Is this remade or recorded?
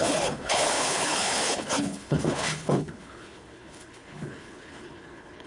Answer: remade